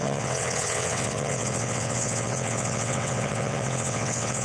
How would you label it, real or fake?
fake